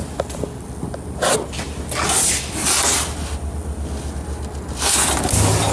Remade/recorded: recorded